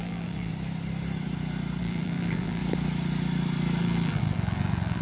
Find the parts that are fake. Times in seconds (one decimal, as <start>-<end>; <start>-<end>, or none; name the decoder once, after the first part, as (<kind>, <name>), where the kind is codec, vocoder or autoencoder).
0.0-0.5 (vocoder, BigVGAN v2); 1.8-2.6; 3.8-5.0